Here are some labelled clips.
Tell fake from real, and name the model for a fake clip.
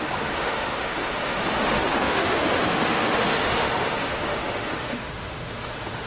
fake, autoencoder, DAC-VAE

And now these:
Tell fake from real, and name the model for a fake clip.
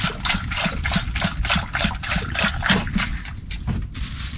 real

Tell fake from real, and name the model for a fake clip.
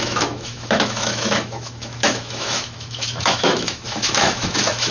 fake, autoencoder, DAC-VAE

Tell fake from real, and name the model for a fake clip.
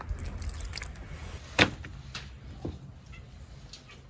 real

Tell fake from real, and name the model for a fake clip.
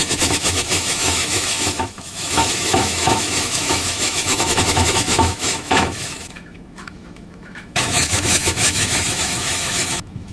fake, autoencoder, DAC-VAE